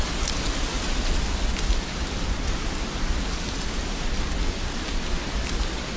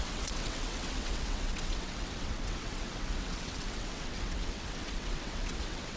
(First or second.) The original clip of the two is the first